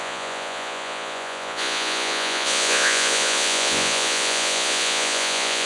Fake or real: fake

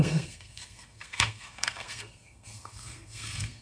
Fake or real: fake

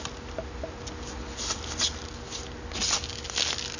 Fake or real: real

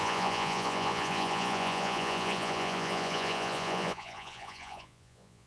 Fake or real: fake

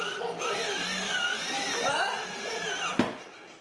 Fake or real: real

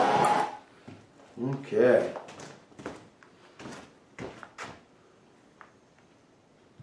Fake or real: real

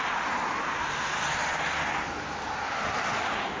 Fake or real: real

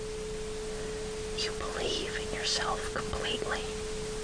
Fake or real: real